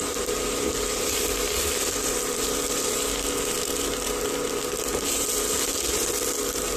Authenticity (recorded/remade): recorded